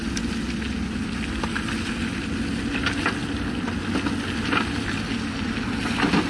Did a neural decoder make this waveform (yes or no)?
no